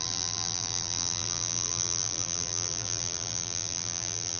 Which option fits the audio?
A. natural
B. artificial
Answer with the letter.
B